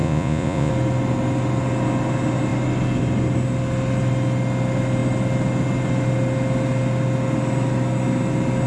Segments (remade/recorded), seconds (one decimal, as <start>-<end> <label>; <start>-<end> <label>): 0.0-0.7 remade; 0.7-8.7 recorded